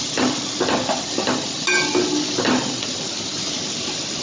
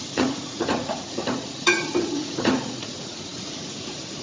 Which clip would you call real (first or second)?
first